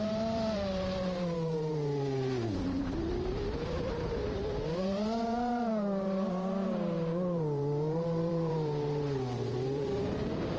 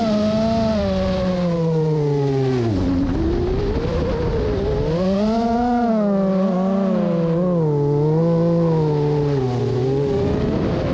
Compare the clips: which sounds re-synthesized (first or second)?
first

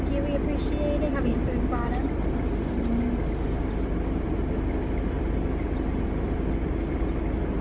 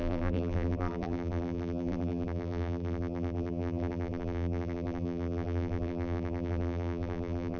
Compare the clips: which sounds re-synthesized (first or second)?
second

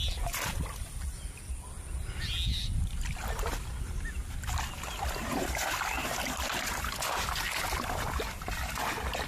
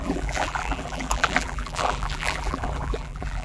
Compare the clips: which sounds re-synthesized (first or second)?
second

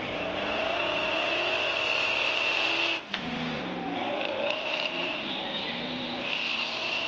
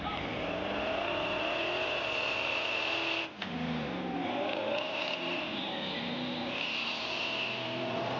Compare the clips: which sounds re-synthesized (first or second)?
first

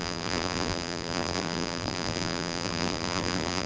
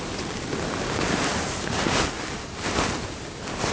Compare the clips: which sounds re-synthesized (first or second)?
first